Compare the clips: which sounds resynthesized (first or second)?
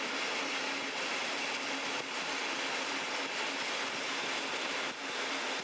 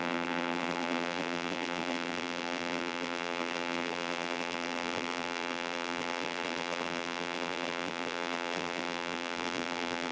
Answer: second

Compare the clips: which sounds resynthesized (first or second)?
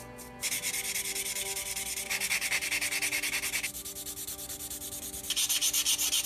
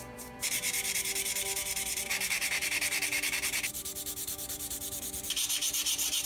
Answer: second